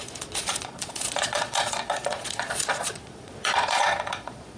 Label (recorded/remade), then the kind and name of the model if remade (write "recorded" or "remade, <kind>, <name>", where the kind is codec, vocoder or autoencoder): remade, vocoder, Vocos